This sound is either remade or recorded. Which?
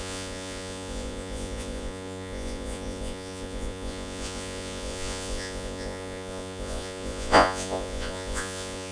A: remade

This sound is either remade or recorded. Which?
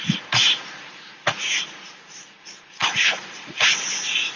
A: remade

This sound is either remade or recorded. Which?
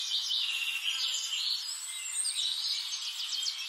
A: recorded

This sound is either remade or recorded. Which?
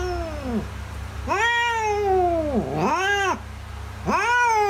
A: recorded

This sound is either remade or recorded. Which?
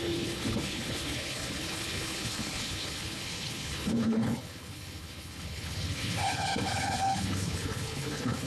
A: remade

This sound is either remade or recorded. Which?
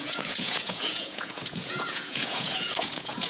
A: remade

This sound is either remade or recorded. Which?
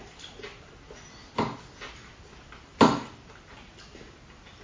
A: recorded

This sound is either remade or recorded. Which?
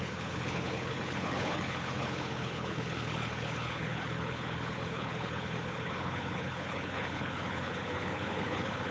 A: remade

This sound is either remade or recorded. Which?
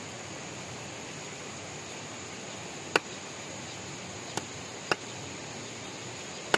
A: recorded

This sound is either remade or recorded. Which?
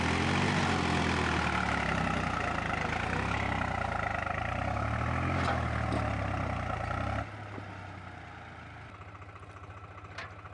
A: recorded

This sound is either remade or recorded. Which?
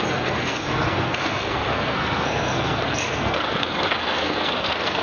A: remade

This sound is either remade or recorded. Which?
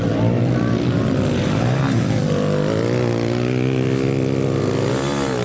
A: recorded